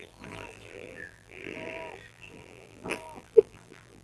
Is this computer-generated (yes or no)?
yes